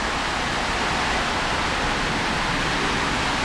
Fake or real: fake